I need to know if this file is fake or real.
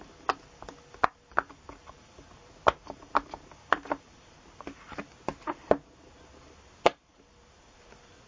real